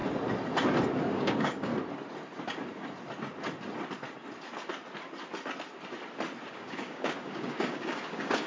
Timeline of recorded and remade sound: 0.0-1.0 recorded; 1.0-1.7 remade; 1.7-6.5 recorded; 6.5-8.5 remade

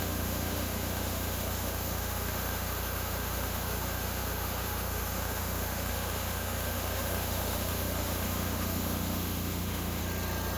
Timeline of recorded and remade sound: 0.0-10.0 remade; 10.0-10.6 recorded

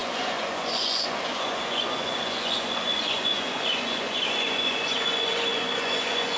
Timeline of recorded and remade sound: 0.0-6.4 remade

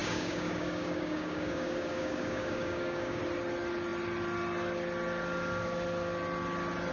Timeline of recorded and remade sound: 0.0-3.2 remade; 3.2-6.9 recorded

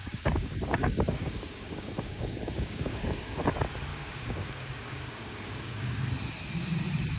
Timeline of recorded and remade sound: 0.0-3.4 remade; 3.4-3.9 recorded; 3.9-6.0 remade; 6.0-7.2 recorded

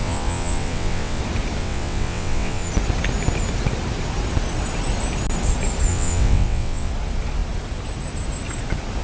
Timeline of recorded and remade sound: 0.0-1.2 remade; 1.2-1.6 recorded; 1.6-2.7 remade; 2.7-5.9 recorded; 5.9-6.9 remade; 6.9-9.0 recorded

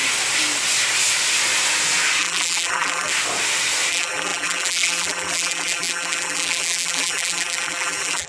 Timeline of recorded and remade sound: 0.0-2.2 recorded; 2.2-3.1 remade; 3.1-3.9 recorded; 3.9-8.3 remade

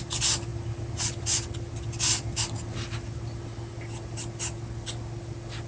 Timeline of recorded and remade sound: 0.0-5.7 recorded